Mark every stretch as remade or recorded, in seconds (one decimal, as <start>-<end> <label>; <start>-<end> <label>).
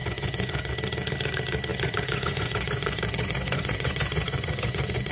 0.0-0.7 remade; 0.7-1.7 recorded; 1.7-5.1 remade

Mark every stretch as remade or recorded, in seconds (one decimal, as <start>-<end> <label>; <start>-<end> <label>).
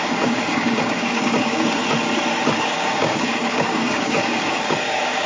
0.0-1.8 remade; 1.8-2.6 recorded; 2.6-5.3 remade